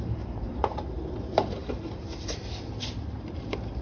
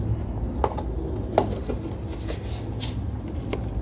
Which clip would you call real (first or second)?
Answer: second